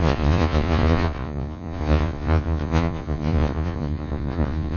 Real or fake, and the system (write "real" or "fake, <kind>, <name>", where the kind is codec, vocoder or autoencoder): fake, vocoder, Vocos